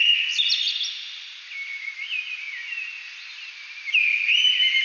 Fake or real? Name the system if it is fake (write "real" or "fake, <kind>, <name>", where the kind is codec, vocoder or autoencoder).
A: real